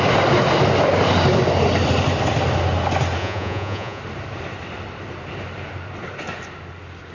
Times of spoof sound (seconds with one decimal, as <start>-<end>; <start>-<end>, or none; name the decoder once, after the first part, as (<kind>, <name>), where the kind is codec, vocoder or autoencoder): 3.2-4.0 (vocoder, Vocos)